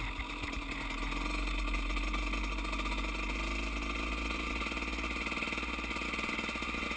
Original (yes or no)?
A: yes